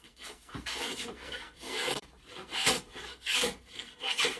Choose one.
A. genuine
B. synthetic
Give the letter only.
B